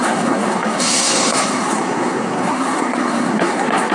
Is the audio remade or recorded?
remade